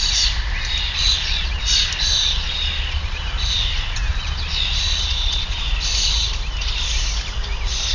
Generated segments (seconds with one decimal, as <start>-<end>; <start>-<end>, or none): 1.0-1.6; 2.2-3.2; 4.1-5.6